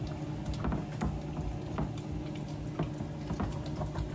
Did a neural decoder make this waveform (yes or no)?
no